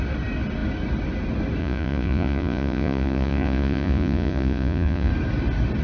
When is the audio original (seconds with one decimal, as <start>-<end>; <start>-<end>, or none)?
0.0-1.6; 5.1-5.8